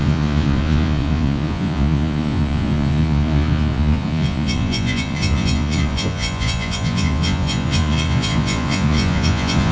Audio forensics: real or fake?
fake